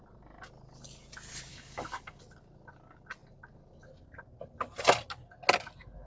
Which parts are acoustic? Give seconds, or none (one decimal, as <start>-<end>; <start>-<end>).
0.0-1.5; 2.2-6.1